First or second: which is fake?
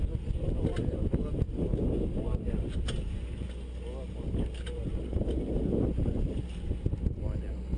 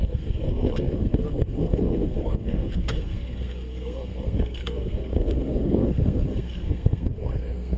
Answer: second